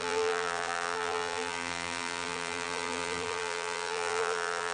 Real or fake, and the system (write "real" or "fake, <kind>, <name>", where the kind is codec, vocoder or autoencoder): fake, vocoder, BigVGAN v2